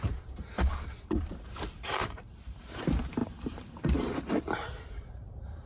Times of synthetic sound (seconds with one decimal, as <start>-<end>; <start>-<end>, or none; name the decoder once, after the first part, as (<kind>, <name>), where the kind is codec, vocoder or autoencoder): 0.0-5.7 (vocoder, BigVGAN v2)